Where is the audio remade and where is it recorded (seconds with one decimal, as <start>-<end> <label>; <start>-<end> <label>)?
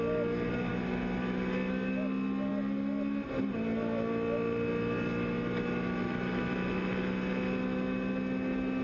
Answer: 0.0-8.8 recorded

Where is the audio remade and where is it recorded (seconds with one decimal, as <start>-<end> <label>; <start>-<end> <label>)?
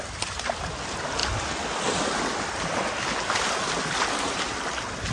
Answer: 0.0-5.1 recorded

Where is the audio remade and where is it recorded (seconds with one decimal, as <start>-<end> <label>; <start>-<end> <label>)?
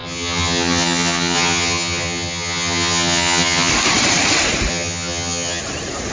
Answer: 0.0-3.7 remade; 3.7-4.7 recorded; 4.7-5.6 remade; 5.6-6.1 recorded